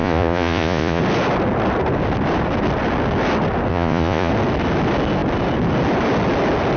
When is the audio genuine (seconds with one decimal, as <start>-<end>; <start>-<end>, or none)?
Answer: 1.0-3.7; 4.3-6.8